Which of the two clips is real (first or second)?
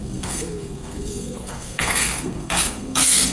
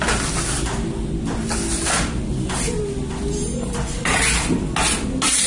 second